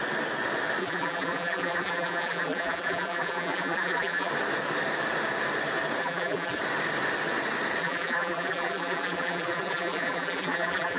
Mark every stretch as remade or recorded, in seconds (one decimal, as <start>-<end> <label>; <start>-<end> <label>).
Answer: 0.0-0.8 recorded; 0.8-4.3 remade; 4.3-6.0 recorded; 6.0-6.6 remade; 6.6-7.8 recorded; 7.8-11.0 remade